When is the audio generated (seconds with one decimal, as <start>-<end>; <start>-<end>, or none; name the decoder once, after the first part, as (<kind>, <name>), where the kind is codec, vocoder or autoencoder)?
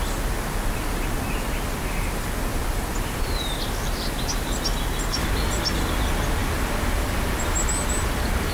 2.5-3.0 (vocoder, BigVGAN v2); 6.4-8.5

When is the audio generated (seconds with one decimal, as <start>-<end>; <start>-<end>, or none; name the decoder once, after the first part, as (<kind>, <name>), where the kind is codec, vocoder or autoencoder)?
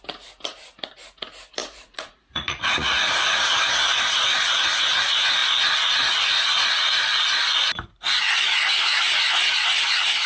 1.6-3.1 (vocoder, Vocos)